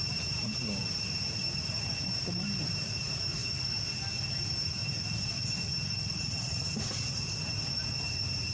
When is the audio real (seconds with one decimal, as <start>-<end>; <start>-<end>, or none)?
3.4-4.3; 4.8-6.2